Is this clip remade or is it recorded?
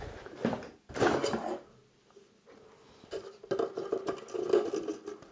recorded